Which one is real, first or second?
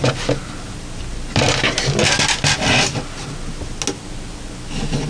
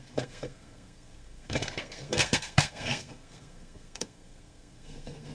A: first